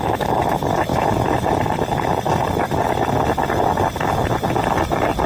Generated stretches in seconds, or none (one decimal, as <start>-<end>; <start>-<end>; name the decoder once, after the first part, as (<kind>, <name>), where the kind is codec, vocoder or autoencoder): none